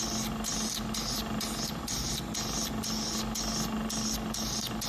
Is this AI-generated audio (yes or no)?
no